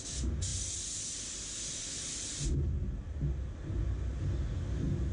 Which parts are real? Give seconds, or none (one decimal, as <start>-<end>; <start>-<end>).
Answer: 0.0-5.1